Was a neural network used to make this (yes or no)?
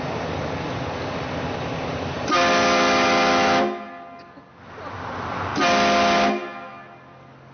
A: no